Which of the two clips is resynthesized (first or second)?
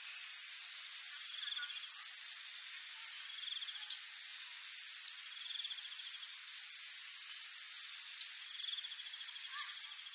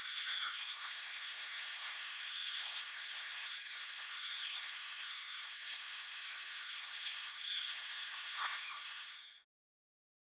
second